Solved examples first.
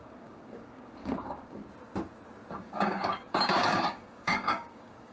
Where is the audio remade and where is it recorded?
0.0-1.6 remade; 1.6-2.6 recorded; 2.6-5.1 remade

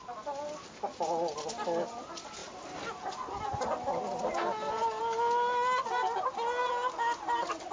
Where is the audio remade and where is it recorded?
0.0-7.7 recorded

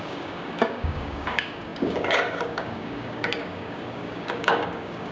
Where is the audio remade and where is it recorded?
0.0-5.1 remade

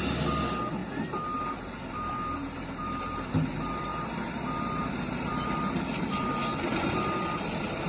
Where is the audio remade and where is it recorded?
0.0-7.9 recorded

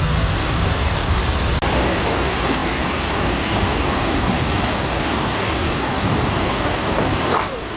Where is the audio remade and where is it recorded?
0.0-1.2 remade; 1.2-1.8 recorded; 1.8-7.8 remade

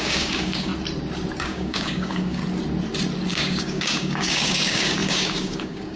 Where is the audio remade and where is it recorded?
0.0-0.7 remade; 0.7-1.4 recorded; 1.4-2.4 remade; 2.4-3.3 recorded; 3.3-6.0 remade

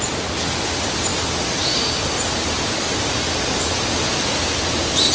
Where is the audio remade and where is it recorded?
0.0-5.1 recorded